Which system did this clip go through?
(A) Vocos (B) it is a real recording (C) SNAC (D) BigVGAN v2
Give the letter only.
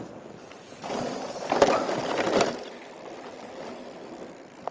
D